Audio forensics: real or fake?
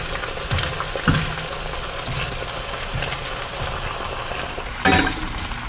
real